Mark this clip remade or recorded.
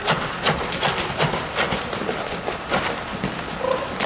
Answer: recorded